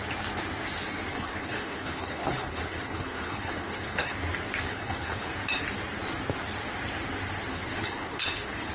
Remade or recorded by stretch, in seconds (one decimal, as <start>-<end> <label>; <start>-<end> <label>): 0.0-1.1 recorded; 1.1-4.2 remade; 4.2-4.7 recorded; 4.7-5.3 remade; 5.3-7.5 recorded; 7.5-8.7 remade